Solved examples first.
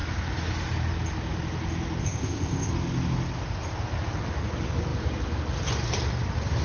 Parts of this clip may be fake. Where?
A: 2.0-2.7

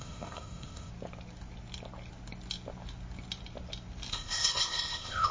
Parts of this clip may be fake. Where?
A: 0.0-0.9; 4.1-5.3